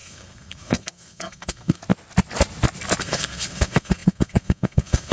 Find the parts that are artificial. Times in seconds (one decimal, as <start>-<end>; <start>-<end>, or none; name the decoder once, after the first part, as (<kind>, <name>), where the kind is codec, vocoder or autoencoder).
0.0-1.8 (codec, SNAC); 3.0-5.1